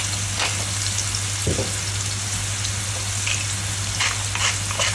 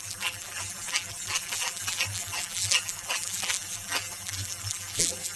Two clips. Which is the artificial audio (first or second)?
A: second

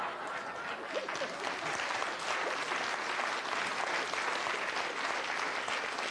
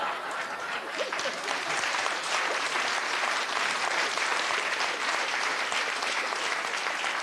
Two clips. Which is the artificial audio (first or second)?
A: second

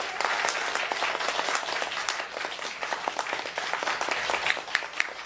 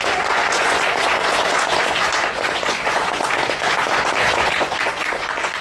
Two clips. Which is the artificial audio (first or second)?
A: second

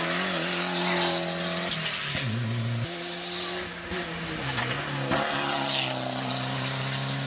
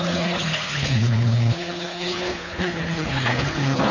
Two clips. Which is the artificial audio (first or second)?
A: second